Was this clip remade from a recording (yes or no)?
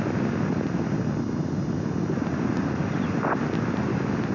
no